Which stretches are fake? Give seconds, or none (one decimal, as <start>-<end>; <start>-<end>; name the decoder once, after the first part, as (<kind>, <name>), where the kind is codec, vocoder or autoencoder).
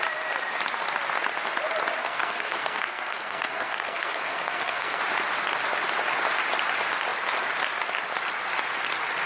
2.0-5.0 (codec, SNAC)